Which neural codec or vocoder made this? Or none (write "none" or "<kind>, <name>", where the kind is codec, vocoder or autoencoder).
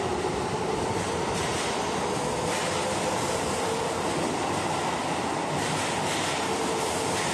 none